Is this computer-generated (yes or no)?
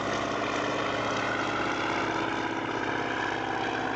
no